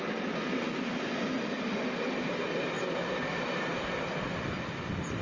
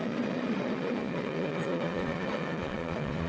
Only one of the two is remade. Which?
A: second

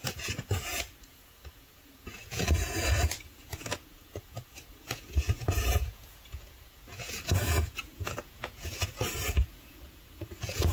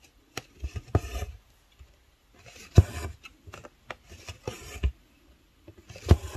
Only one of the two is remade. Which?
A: first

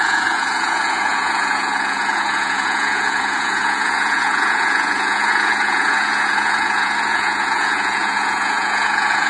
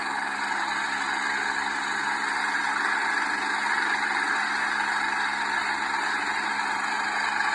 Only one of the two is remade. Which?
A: first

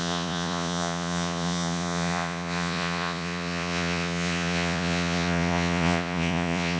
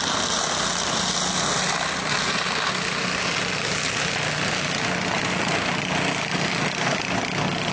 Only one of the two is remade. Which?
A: first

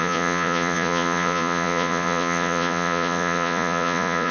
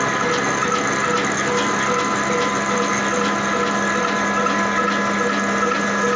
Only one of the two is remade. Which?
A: first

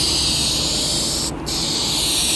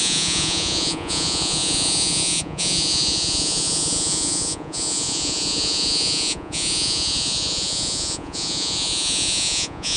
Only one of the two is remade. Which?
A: second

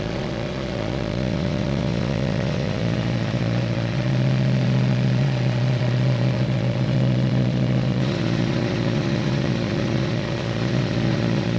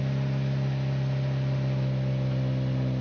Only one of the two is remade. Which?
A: first